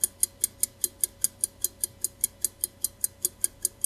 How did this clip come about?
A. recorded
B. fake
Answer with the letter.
A